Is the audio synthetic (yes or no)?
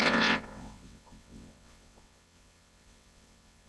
yes